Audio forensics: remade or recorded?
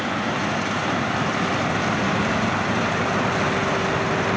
recorded